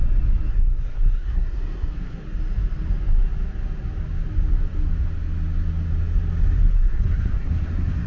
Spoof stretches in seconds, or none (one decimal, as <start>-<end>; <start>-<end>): 0.5-2.2; 6.7-8.1